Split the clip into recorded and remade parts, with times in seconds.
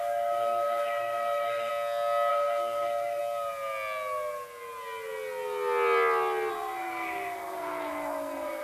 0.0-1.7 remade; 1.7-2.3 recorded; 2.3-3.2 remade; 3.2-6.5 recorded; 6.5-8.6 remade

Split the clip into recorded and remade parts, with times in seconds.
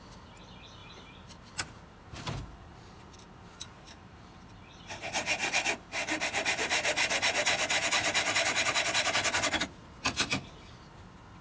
0.0-0.8 recorded; 0.8-4.4 remade; 4.4-5.4 recorded; 5.4-6.9 remade; 6.9-11.4 recorded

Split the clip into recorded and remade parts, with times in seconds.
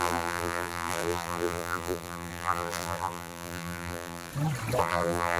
0.0-4.3 remade; 4.3-4.8 recorded; 4.8-5.4 remade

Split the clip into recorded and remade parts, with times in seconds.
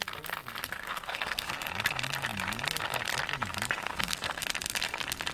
0.0-0.6 recorded; 0.6-1.5 remade; 1.5-3.8 recorded; 3.8-4.4 remade; 4.4-5.3 recorded